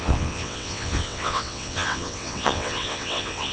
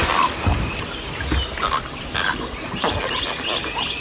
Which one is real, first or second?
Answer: second